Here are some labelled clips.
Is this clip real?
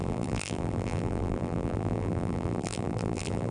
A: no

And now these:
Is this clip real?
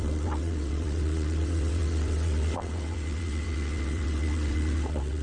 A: no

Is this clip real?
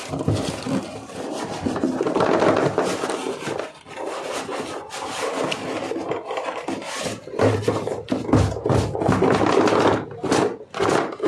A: yes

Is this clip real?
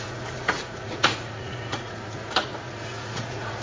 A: no